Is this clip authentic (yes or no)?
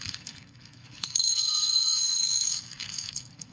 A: no